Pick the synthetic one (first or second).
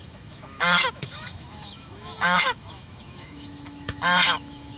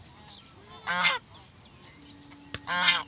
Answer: first